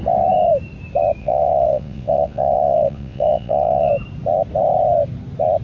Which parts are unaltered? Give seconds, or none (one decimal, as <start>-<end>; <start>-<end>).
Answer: 0.0-1.2; 3.9-5.6